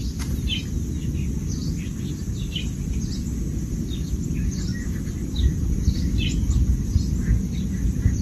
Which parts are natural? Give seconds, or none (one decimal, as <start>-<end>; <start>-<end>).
0.0-8.2